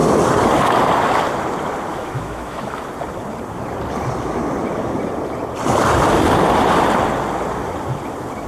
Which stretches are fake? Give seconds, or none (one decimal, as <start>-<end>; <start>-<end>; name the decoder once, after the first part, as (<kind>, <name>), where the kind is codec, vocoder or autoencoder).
1.9-2.9 (autoencoder, DAC-VAE)